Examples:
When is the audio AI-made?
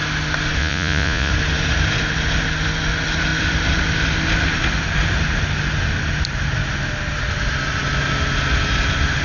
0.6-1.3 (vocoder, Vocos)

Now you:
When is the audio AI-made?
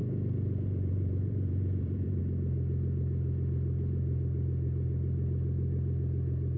0.0-2.2 (vocoder, BigVGAN v2)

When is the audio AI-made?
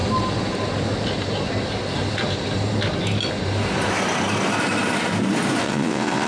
5.6-6.3 (vocoder, WaveNeXt)